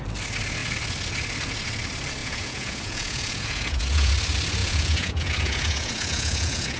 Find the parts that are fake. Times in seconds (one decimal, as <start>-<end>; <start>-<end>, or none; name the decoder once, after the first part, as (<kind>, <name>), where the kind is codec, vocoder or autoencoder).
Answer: 2.2-4.1 (vocoder, Vocos); 4.6-6.8